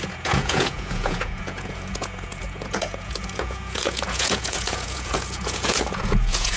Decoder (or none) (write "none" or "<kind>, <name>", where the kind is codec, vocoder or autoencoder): vocoder, Vocos